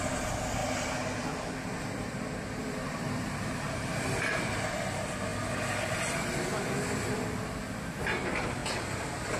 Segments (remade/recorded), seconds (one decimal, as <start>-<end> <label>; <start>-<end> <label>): 0.0-0.6 recorded; 0.6-4.7 remade; 4.7-5.3 recorded; 5.3-6.6 remade; 6.6-8.6 recorded; 8.6-9.4 remade